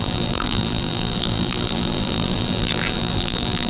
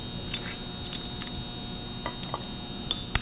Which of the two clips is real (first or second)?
second